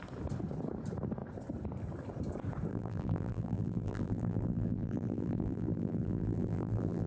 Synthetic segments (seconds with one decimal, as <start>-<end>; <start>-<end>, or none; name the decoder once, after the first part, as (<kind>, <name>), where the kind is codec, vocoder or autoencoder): 2.7-7.1 (vocoder, BigVGAN v2)